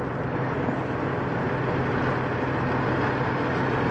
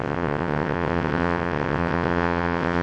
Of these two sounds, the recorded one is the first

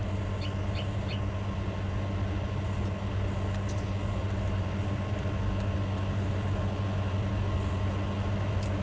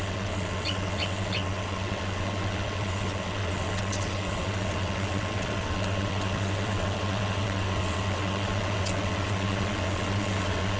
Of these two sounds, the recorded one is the first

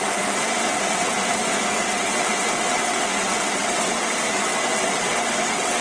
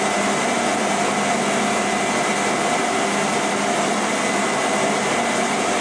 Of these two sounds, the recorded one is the second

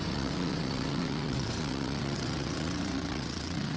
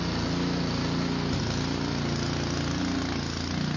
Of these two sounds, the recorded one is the second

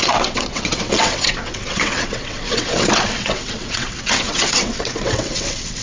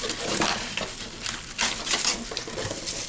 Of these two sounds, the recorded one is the second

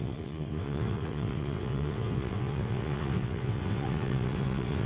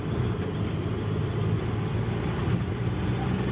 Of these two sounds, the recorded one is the second